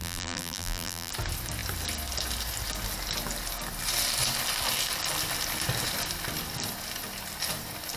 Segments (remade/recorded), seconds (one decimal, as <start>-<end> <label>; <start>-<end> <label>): 0.0-1.1 remade; 1.1-8.0 recorded